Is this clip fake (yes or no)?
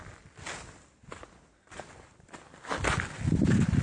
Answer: no